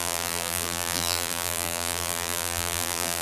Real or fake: fake